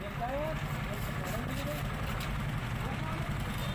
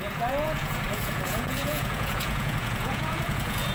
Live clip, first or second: first